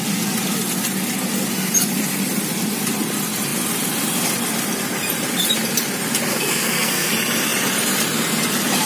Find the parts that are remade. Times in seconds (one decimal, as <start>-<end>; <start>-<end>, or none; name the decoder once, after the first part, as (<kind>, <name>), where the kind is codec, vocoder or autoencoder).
6.3-7.1 (codec, SNAC)